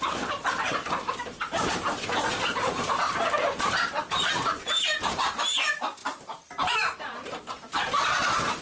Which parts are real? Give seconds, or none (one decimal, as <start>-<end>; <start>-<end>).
none